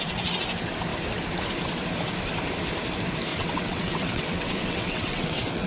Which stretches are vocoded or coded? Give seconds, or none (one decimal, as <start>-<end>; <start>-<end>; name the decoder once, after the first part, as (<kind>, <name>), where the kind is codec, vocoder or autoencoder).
3.3-5.7 (vocoder, WaveNeXt)